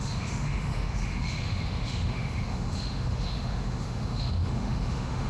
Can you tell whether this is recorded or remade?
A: remade